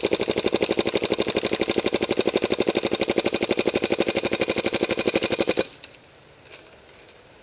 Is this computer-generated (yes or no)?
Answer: no